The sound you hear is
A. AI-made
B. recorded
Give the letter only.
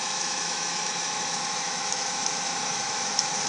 A